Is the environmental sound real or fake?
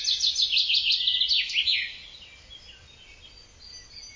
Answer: real